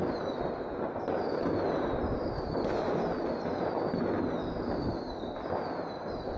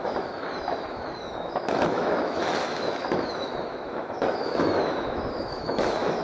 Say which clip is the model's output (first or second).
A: second